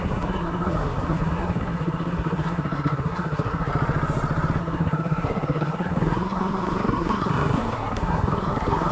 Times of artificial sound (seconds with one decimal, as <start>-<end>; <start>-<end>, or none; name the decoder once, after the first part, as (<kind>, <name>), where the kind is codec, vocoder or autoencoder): 0.0-3.7 (codec, SNAC); 4.6-8.9